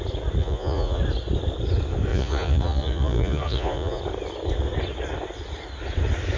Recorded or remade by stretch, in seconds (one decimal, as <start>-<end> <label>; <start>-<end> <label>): 0.0-0.4 recorded; 0.4-1.0 remade; 1.0-2.1 recorded; 2.1-4.0 remade; 4.0-6.4 recorded